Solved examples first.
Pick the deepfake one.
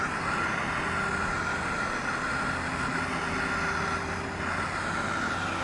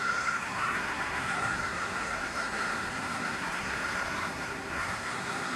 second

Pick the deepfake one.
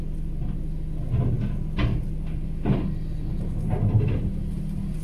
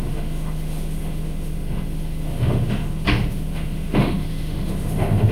second